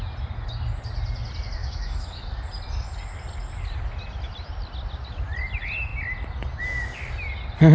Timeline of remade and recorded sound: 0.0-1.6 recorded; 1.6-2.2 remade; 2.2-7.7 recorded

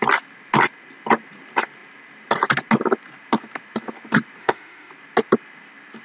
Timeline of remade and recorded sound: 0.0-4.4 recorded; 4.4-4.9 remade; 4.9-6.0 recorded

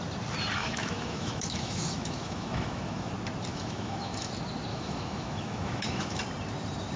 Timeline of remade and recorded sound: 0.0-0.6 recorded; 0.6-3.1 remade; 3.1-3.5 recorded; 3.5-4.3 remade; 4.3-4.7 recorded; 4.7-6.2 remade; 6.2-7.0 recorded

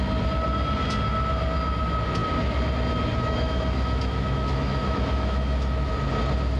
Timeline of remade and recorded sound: 0.0-3.1 recorded; 3.1-5.9 remade; 5.9-6.6 recorded

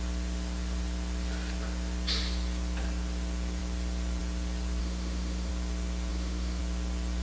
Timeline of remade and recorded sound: 0.0-4.8 recorded; 4.8-5.5 remade; 5.5-6.1 recorded; 6.1-6.6 remade; 6.6-7.2 recorded

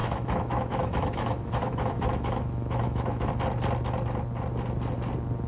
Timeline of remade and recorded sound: 0.0-3.3 remade; 3.3-5.5 recorded

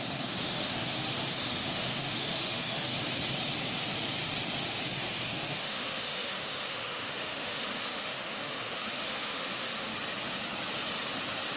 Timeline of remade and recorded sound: 0.0-2.9 remade; 2.9-4.9 recorded; 4.9-9.9 remade; 9.9-11.6 recorded

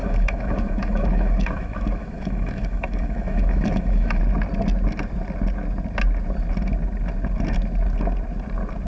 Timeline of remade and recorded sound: 0.0-4.2 remade; 4.2-8.9 recorded